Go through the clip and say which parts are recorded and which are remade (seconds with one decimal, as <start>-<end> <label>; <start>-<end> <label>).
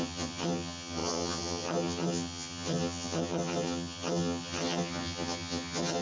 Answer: 0.0-6.0 remade